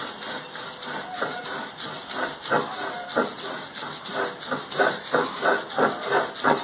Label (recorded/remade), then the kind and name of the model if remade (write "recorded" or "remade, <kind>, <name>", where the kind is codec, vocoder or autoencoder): recorded